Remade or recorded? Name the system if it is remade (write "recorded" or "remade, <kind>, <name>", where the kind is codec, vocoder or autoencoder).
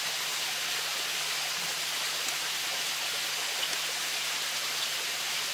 recorded